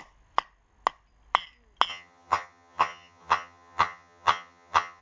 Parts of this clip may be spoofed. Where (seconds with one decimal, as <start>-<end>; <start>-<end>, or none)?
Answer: 1.9-5.0